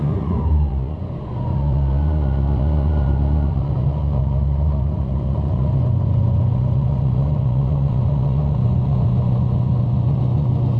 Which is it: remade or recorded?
remade